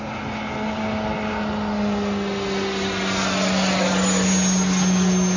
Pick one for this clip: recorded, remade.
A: recorded